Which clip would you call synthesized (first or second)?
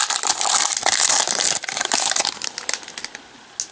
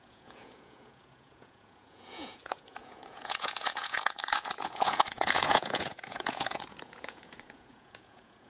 second